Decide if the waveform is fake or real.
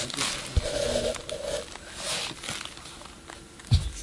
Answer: real